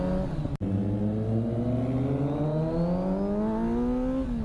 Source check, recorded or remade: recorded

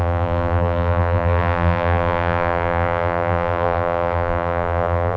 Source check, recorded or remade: remade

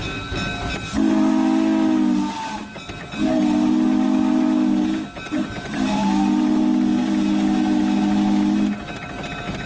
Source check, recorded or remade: recorded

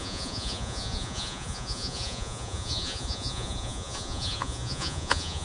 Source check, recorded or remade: remade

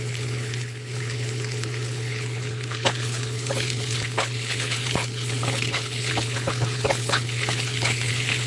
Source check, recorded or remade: remade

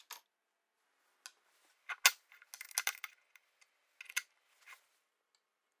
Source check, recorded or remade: recorded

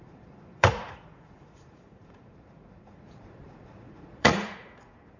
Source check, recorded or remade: remade